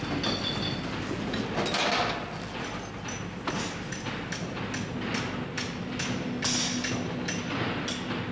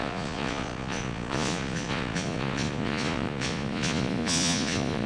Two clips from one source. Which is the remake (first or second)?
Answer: second